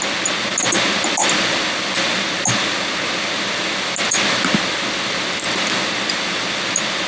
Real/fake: real